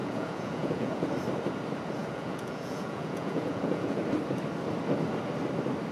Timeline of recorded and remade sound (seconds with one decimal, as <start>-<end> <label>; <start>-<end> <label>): 0.0-1.1 remade; 1.1-2.0 recorded; 2.0-4.0 remade; 4.0-5.9 recorded